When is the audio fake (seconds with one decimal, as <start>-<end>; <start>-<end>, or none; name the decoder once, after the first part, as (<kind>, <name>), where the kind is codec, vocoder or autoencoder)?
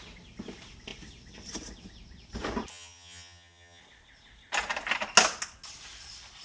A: 2.7-3.8 (vocoder, HiFi-GAN)